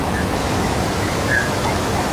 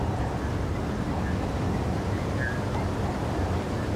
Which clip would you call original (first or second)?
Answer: second